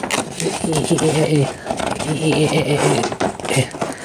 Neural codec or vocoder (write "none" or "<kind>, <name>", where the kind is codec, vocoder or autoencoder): none